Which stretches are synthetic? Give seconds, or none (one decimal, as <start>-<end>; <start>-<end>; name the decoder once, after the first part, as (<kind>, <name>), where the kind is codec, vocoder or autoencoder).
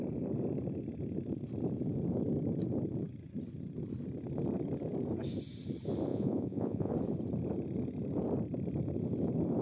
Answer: 6.1-6.9 (vocoder, Vocos)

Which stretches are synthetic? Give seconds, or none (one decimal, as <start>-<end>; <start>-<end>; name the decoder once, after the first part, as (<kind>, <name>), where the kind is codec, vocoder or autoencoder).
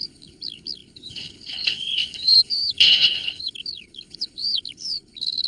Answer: 0.0-5.5 (codec, HILCodec)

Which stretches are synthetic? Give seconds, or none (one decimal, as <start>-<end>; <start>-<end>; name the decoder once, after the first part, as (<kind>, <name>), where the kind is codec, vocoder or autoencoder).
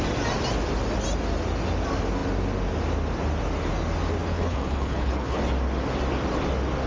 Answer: 4.3-5.4 (codec, HILCodec)